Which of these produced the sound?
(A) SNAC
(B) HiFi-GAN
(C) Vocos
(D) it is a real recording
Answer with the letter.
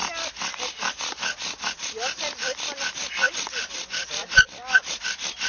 D